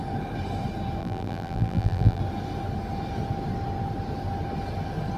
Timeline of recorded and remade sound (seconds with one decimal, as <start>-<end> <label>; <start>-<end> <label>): 0.0-1.0 recorded; 1.0-2.2 remade; 2.2-5.2 recorded